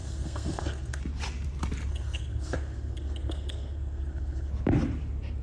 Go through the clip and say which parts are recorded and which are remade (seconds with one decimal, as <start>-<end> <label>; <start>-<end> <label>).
0.0-1.0 remade; 1.0-1.9 recorded; 1.9-4.5 remade; 4.5-5.4 recorded